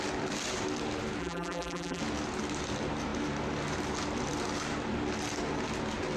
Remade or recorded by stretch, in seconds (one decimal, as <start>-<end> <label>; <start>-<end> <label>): 0.0-1.2 recorded; 1.2-2.0 remade; 2.0-6.2 recorded